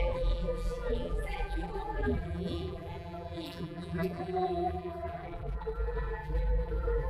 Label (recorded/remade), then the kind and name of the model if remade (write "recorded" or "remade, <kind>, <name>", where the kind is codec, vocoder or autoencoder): remade, vocoder, BigVGAN v2